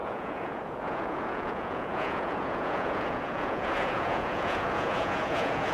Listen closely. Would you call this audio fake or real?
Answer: fake